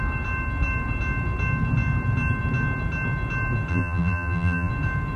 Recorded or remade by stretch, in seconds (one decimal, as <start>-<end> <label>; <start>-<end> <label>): 0.0-3.7 recorded; 3.7-4.7 remade; 4.7-5.2 recorded